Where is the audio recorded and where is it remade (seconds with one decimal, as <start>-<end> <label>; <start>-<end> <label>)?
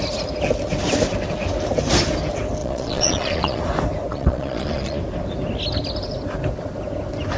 0.0-2.6 recorded; 2.6-3.6 remade; 3.6-4.1 recorded; 4.1-5.0 remade; 5.0-7.4 recorded